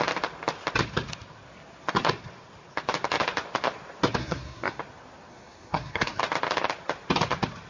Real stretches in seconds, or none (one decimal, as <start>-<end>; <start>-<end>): 0.0-4.2; 4.8-5.3; 6.2-7.7